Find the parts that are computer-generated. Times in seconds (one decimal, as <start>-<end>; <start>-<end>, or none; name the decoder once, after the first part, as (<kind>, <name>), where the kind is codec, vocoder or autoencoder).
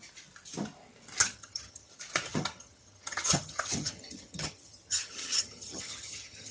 1.2-1.9 (vocoder, HiFi-GAN); 2.3-6.5